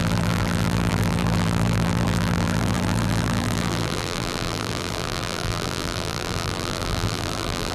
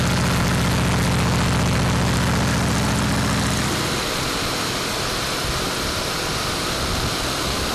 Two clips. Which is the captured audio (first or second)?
second